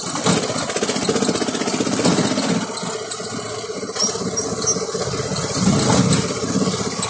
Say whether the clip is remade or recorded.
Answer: recorded